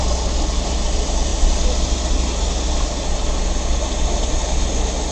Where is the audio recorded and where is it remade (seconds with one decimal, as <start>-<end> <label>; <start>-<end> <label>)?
0.0-5.1 recorded